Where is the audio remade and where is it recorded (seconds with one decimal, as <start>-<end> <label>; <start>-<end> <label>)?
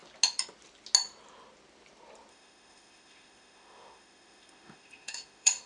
0.0-2.3 recorded; 2.3-5.7 remade